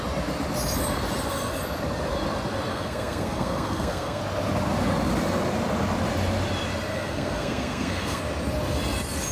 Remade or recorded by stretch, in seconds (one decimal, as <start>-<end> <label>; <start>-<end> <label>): 0.0-2.7 recorded; 2.7-4.2 remade; 4.2-6.9 recorded; 6.9-8.2 remade; 8.2-9.3 recorded